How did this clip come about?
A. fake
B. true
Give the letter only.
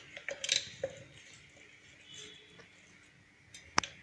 B